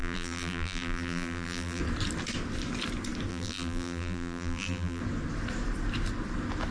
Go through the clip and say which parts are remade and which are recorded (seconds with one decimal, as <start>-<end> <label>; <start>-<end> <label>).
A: 0.0-1.8 remade; 1.8-3.3 recorded; 3.3-5.0 remade; 5.0-6.7 recorded